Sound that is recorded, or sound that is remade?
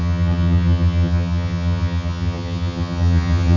remade